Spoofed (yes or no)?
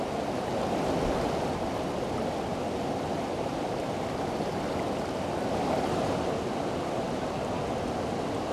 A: no